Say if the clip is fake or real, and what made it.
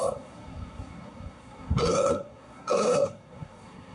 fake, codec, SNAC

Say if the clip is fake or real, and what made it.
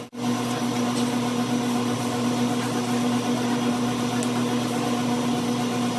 real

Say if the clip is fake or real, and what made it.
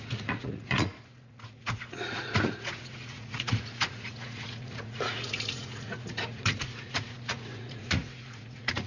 fake, vocoder, Vocos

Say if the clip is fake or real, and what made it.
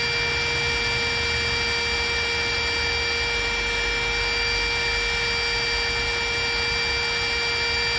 real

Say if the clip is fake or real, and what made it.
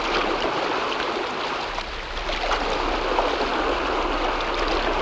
real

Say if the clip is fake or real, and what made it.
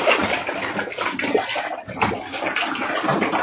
real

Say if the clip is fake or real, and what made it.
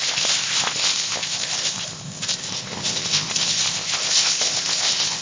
fake, codec, ZipCodec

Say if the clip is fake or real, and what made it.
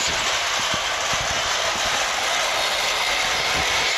real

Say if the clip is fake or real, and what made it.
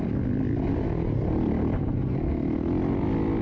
real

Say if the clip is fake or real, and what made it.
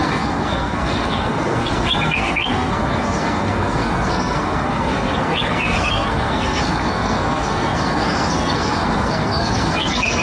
fake, codec, SNAC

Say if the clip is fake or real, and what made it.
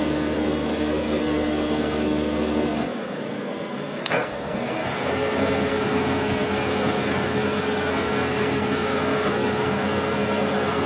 fake, codec, SNAC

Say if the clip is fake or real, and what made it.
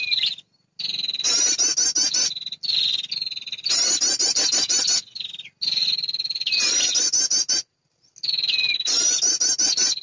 real